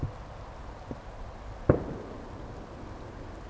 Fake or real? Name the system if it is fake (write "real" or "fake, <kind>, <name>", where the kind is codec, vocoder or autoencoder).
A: real